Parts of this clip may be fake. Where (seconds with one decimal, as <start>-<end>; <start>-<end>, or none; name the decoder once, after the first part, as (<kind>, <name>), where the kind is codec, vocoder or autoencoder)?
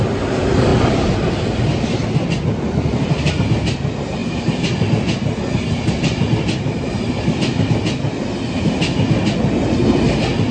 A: 0.7-3.3 (vocoder, BigVGAN v2)